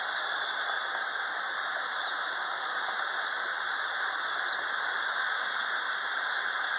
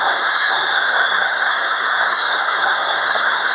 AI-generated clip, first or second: second